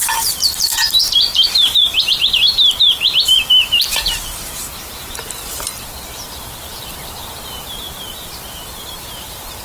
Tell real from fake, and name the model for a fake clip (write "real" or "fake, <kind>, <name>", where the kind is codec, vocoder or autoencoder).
fake, vocoder, BigVGAN v2